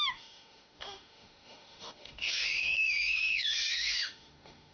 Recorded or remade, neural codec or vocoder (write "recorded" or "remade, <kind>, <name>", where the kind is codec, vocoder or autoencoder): remade, autoencoder, DAC-VAE